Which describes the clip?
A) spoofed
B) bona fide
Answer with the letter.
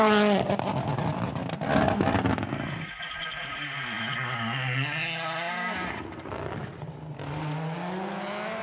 B